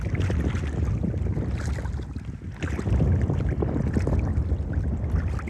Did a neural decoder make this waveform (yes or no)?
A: no